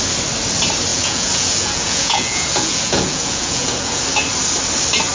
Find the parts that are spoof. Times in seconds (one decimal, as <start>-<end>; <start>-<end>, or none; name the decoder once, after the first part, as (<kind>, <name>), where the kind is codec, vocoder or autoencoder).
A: 0.9-4.0 (vocoder, Vocos)